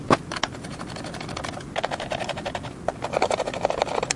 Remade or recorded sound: recorded